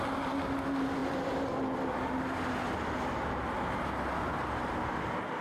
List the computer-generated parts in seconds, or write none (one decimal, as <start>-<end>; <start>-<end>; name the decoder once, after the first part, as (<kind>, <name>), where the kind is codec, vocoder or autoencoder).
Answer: none